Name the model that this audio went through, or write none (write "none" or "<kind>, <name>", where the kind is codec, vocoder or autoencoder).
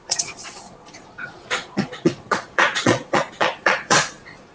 vocoder, Vocos